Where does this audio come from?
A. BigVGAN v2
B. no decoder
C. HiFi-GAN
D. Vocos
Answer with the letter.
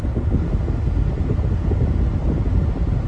B